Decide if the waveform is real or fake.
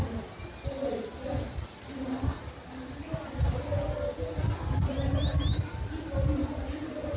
real